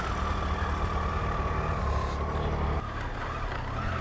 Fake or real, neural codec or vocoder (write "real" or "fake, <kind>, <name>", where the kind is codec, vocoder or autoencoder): real